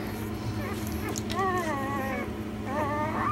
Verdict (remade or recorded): recorded